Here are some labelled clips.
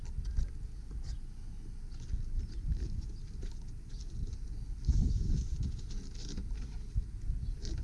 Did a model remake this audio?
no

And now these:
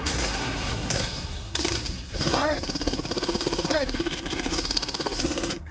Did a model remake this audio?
yes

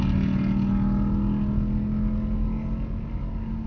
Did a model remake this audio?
no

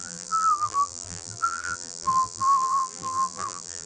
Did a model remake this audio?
yes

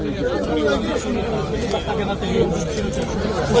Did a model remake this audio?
no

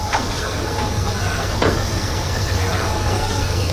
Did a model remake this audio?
yes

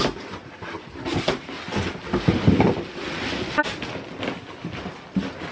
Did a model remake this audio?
no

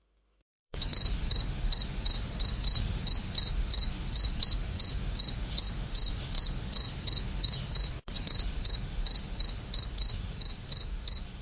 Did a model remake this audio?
yes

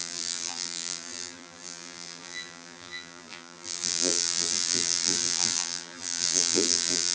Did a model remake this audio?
yes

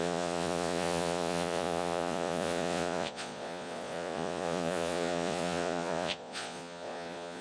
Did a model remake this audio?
yes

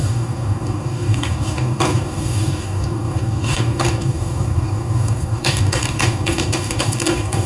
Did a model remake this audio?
yes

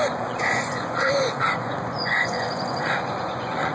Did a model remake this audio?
yes